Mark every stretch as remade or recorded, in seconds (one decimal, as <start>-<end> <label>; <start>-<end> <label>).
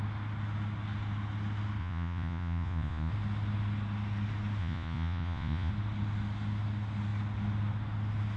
0.0-1.8 recorded; 1.8-3.1 remade; 3.1-4.6 recorded; 4.6-5.7 remade; 5.7-8.4 recorded